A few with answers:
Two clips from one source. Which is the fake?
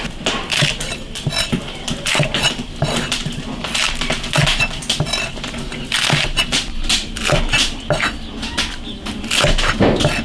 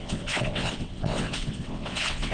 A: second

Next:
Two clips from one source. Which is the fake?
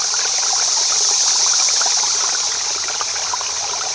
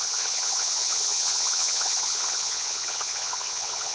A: second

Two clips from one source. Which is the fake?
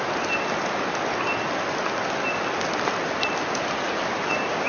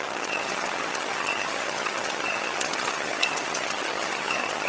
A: second